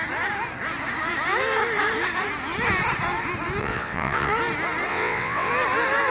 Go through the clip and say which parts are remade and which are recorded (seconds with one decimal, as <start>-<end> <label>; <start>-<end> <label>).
0.0-3.6 recorded; 3.6-4.3 remade; 4.3-4.9 recorded; 4.9-5.5 remade; 5.5-6.1 recorded